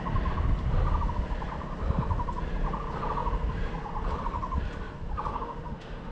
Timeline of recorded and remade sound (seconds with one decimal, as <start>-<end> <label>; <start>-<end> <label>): 0.0-5.3 recorded; 5.3-6.1 remade